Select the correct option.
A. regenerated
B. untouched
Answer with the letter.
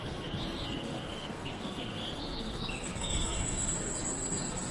A